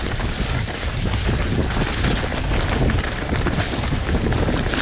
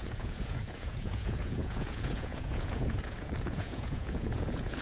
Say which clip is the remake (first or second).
second